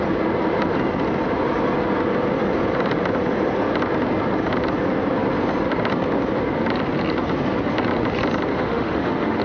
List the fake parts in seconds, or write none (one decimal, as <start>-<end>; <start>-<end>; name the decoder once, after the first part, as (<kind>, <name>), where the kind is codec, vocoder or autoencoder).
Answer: 8.5-9.4 (autoencoder, DAC-VAE)